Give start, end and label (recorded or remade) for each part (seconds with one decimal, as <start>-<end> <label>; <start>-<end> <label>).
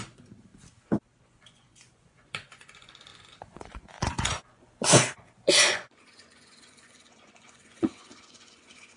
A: 0.0-0.5 remade; 0.5-1.2 recorded; 1.2-9.0 remade